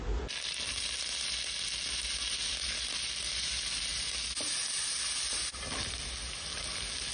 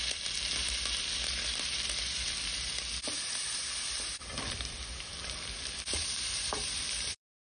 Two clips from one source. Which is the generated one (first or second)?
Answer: second